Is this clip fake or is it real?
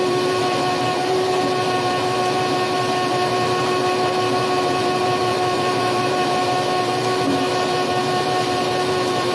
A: fake